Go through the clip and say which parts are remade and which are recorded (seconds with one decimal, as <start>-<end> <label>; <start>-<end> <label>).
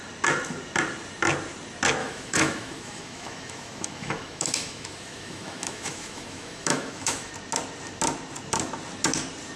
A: 0.0-2.0 recorded; 2.0-7.3 remade; 7.3-9.6 recorded